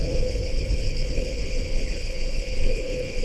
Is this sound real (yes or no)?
no